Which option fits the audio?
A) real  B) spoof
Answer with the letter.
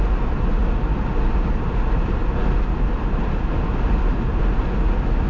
A